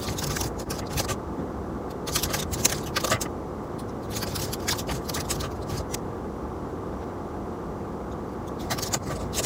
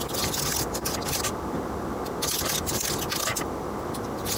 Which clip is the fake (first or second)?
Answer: first